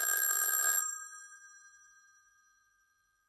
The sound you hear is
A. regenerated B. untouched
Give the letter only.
A